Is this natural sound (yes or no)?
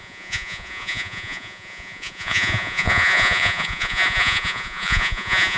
no